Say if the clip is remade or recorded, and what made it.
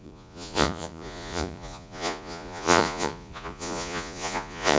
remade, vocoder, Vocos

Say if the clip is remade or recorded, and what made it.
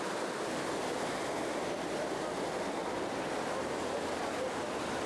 recorded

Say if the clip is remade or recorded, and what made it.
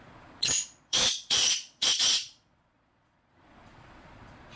remade, vocoder, Vocos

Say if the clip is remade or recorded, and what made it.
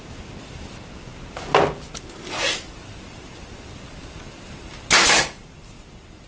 recorded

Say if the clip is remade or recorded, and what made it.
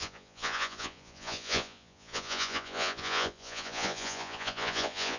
remade, vocoder, Vocos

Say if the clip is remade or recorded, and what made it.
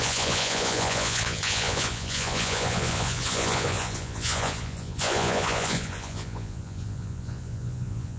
remade, vocoder, Vocos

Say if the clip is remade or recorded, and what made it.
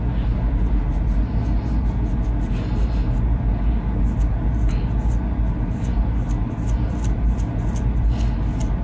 recorded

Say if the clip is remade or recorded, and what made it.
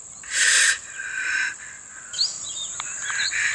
recorded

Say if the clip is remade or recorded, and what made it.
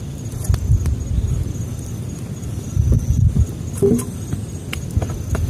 recorded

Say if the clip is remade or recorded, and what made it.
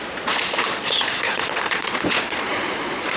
remade, vocoder, Vocos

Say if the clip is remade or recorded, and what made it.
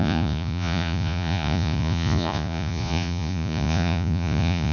remade, vocoder, Vocos